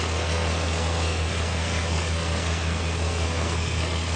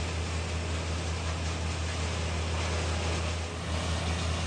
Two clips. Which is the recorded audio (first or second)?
second